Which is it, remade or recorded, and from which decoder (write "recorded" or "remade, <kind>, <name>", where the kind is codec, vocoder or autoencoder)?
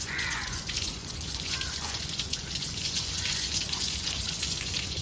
remade, vocoder, Vocos